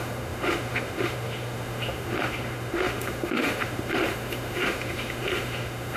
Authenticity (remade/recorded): remade